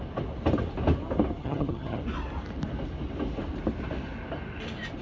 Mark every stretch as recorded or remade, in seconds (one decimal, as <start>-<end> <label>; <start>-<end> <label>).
0.0-1.4 recorded; 1.4-2.0 remade; 2.0-5.0 recorded